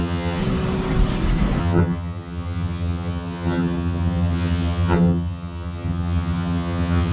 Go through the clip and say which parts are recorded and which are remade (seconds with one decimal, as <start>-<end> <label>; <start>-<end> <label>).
0.0-0.4 remade; 0.4-1.6 recorded; 1.6-7.1 remade